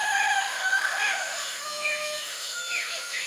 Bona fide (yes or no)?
no